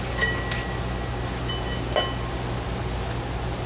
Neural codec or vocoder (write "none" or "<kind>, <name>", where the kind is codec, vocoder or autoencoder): none